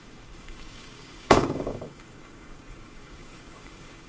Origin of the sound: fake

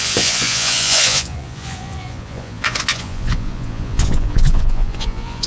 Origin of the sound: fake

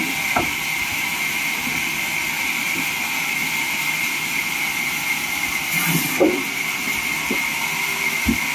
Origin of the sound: fake